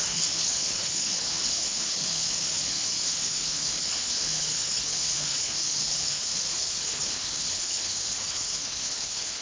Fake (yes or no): yes